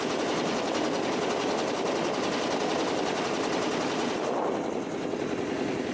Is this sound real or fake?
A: real